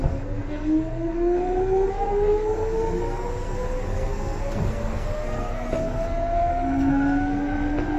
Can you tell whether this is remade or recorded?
remade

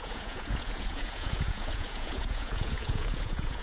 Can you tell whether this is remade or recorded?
remade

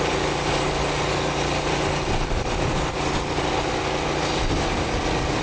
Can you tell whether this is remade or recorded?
recorded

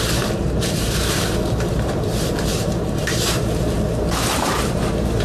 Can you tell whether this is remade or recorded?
remade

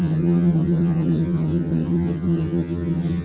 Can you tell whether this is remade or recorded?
remade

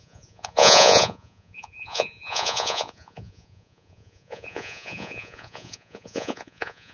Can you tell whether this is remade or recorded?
remade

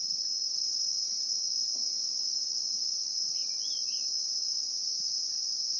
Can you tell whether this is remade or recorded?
recorded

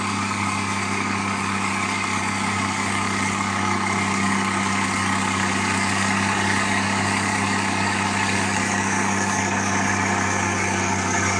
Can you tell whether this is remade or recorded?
remade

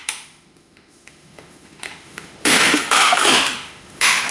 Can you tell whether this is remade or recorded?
remade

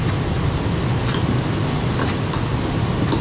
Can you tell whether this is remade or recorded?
recorded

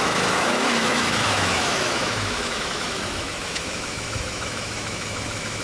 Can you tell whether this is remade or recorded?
remade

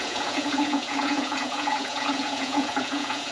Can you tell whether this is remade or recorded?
remade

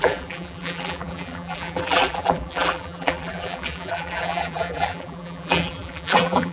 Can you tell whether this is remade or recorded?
remade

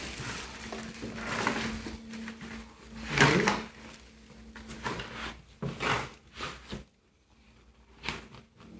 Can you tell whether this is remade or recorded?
recorded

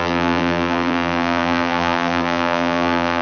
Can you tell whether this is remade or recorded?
remade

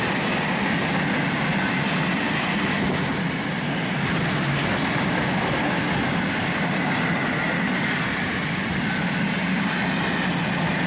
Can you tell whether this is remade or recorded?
recorded